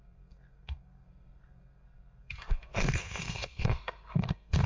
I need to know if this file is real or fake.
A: fake